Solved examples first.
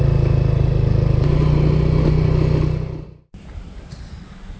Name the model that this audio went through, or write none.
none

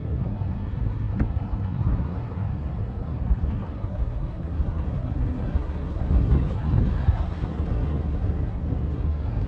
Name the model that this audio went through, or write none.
codec, SNAC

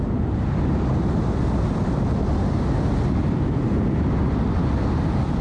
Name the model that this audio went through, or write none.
none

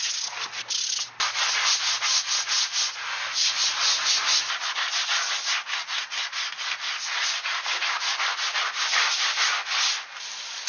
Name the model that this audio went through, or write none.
none